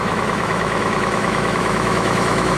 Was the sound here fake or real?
fake